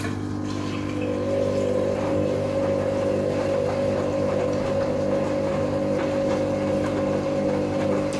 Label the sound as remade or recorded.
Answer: recorded